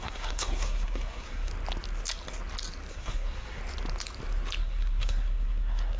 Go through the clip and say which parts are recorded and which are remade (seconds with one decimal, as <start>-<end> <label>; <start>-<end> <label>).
0.0-1.5 remade; 1.5-2.9 recorded; 2.9-3.6 remade; 3.6-4.6 recorded; 4.6-6.0 remade

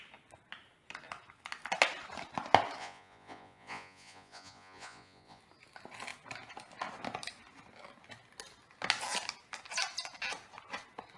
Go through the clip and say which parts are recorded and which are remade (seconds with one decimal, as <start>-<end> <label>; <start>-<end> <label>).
0.0-2.8 recorded; 2.8-5.4 remade; 5.4-11.2 recorded

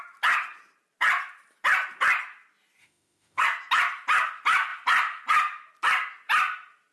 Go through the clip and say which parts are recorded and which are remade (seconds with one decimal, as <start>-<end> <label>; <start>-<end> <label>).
0.0-2.8 recorded; 2.8-3.4 remade; 3.4-6.9 recorded

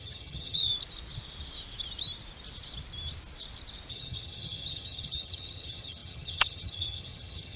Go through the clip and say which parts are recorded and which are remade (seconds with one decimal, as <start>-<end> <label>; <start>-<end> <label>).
0.0-0.7 remade; 0.7-3.9 recorded; 3.9-7.6 remade

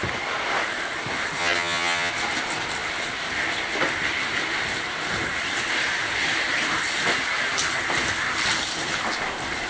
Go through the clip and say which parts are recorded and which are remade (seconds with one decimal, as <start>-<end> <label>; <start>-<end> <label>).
0.0-1.4 recorded; 1.4-2.1 remade; 2.1-9.7 recorded